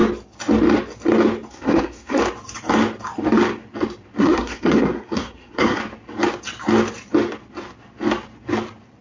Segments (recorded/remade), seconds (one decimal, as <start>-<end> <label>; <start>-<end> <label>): 0.0-1.5 recorded; 1.5-2.2 remade; 2.2-4.2 recorded; 4.2-5.8 remade; 5.8-9.0 recorded